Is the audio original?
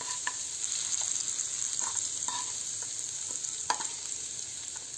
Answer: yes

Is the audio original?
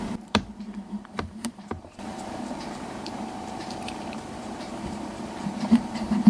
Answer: no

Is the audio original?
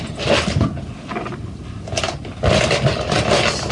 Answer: yes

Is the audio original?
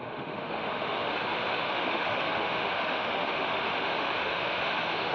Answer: no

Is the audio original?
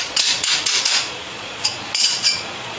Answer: no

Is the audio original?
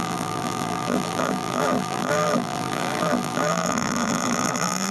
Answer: no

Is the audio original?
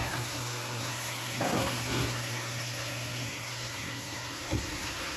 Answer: no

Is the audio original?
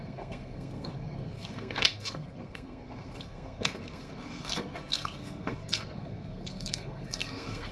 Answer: no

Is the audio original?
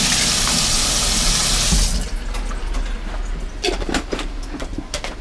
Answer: yes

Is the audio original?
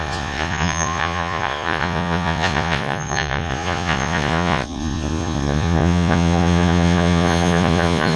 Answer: no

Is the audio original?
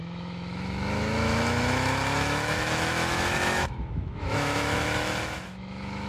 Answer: no